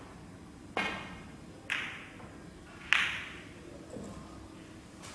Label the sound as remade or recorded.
recorded